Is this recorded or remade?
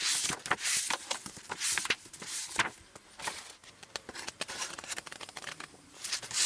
remade